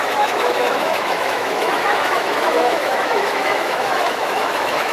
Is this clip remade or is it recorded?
remade